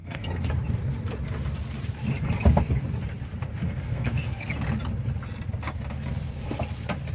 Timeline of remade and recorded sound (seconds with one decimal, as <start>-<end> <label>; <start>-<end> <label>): 0.0-0.5 remade; 0.5-3.5 recorded; 3.5-4.5 remade; 4.5-7.1 recorded